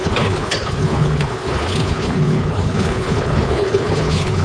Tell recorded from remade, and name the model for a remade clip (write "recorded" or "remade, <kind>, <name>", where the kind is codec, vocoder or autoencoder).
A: remade, codec, HILCodec